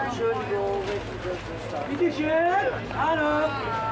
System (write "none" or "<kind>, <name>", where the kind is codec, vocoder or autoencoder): none